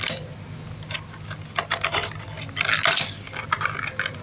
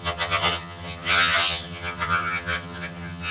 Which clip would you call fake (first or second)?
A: second